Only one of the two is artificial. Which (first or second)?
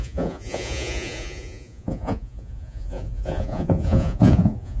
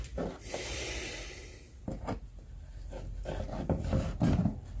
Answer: first